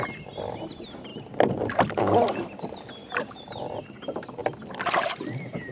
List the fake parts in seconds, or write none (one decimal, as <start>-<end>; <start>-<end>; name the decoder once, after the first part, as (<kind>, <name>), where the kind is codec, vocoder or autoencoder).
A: 3.0-4.3 (vocoder, BigVGAN v2)